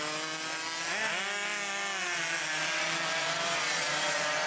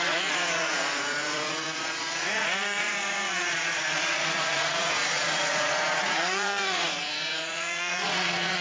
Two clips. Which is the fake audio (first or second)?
second